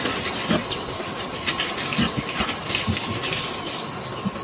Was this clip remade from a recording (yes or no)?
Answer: no